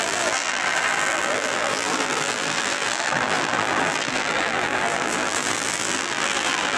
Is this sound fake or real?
fake